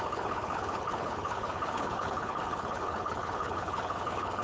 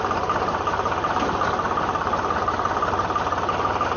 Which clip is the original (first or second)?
second